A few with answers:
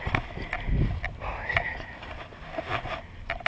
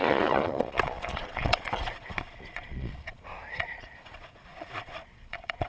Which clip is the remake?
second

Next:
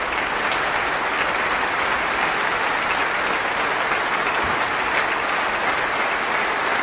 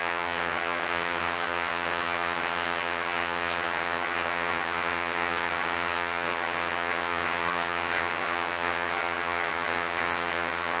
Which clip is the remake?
second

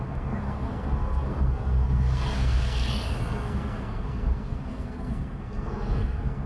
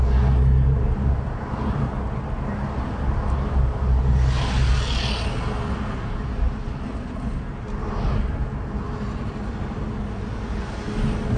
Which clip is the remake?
first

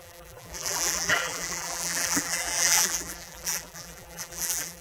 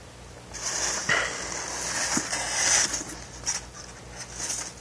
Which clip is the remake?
first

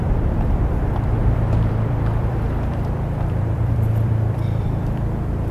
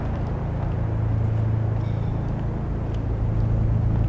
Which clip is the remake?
first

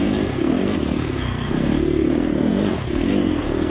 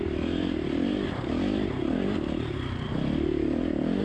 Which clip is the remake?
first